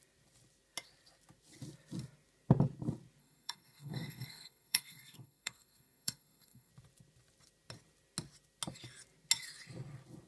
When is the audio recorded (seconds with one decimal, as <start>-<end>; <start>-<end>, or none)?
0.0-3.2; 6.7-10.3